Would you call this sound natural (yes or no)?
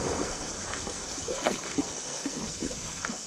no